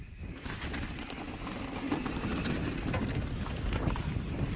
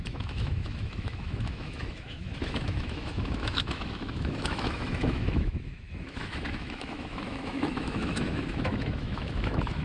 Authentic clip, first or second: first